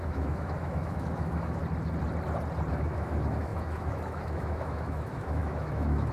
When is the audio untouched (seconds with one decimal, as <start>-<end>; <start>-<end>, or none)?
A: 1.6-2.7